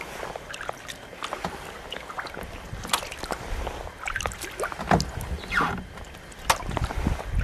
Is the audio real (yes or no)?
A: yes